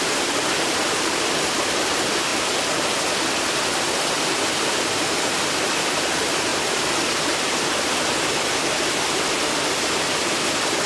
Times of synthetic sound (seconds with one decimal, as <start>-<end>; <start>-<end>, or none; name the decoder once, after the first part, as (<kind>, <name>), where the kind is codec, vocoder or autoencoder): none